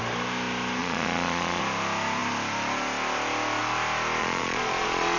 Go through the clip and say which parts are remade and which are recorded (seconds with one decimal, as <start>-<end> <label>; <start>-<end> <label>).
0.0-0.8 recorded; 0.8-1.6 remade; 1.6-4.2 recorded; 4.2-5.2 remade